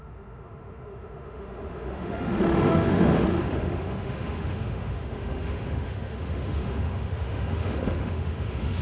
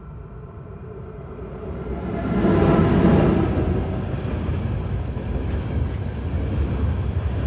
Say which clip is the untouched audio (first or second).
second